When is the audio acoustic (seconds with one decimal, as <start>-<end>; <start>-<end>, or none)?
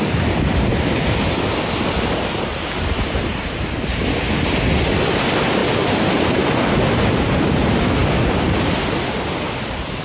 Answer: 0.0-10.0